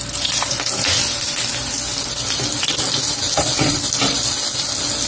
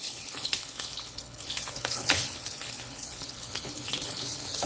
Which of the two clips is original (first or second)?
first